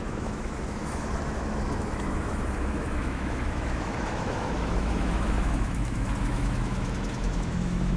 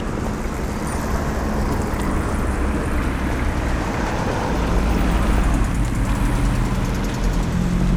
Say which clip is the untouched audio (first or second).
second